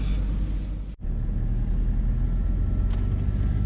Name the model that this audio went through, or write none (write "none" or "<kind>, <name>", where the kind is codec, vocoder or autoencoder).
none